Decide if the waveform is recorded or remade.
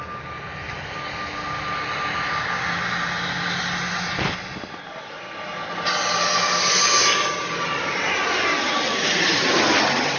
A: recorded